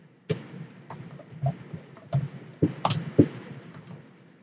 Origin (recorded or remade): recorded